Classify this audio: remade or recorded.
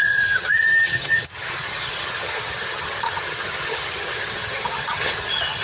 remade